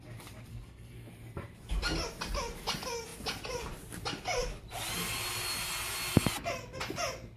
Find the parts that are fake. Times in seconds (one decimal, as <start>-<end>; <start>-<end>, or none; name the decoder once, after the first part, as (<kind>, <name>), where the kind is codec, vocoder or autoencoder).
0.5-1.1 (codec, SNAC)